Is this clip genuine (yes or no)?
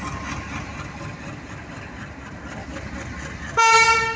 yes